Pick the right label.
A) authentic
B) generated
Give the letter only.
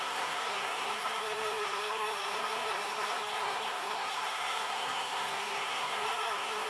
B